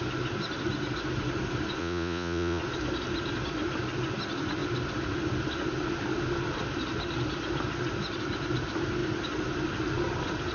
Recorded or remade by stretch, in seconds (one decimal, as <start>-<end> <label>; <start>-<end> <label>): 0.0-1.8 recorded; 1.8-2.6 remade; 2.6-10.5 recorded